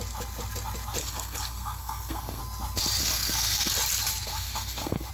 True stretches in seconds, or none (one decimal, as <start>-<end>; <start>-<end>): 0.0-1.0; 2.4-3.0; 3.7-4.3